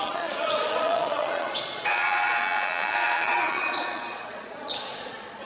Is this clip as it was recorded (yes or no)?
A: no